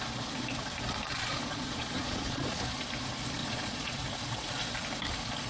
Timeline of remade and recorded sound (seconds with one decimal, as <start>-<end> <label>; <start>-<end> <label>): 0.0-1.2 recorded; 1.2-2.6 remade; 2.6-3.4 recorded; 3.4-4.0 remade; 4.0-5.5 recorded